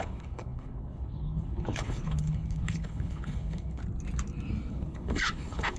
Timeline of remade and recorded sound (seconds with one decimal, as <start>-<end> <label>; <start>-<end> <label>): 0.0-3.8 remade; 3.8-4.7 recorded; 4.7-5.8 remade